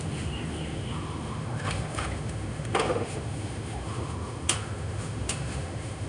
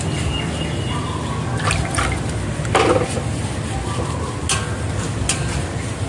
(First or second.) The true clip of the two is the second